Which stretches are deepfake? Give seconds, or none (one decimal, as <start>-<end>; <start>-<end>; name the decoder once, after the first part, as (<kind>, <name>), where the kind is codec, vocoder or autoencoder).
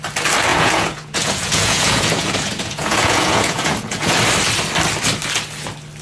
0.5-4.1 (vocoder, Vocos)